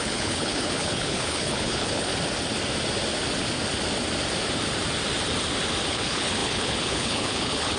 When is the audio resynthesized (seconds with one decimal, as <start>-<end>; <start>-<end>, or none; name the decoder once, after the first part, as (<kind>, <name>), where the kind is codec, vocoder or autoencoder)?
0.0-2.1 (codec, HILCodec); 5.9-7.8